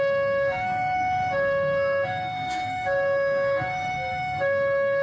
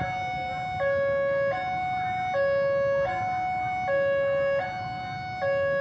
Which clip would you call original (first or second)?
second